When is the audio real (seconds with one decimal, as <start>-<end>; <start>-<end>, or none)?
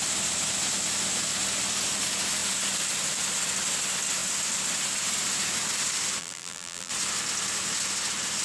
0.0-6.2; 6.9-8.4